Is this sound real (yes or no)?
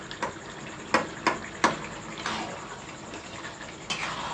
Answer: yes